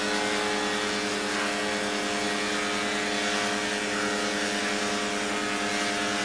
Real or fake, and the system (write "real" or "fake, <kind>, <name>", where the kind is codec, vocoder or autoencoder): real